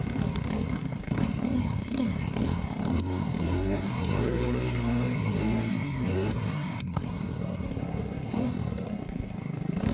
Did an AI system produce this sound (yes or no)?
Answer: yes